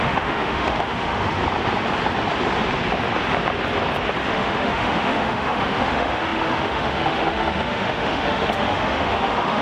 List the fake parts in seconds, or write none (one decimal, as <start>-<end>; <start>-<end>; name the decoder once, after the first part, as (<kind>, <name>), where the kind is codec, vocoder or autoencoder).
0.0-1.4 (autoencoder, DAC-VAE); 4.2-9.6